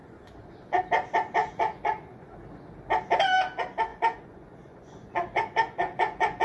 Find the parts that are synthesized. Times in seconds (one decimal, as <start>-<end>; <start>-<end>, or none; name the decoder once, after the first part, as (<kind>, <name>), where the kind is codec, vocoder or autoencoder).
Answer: 0.0-0.8 (vocoder, Vocos); 1.4-2.3; 3.9-6.4